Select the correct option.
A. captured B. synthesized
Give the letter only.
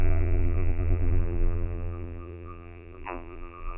B